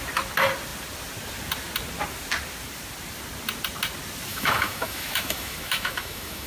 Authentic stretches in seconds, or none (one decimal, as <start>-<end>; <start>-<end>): 0.0-4.3